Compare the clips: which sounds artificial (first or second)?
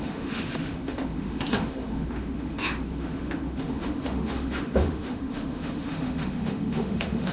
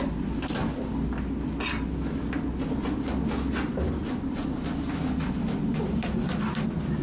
first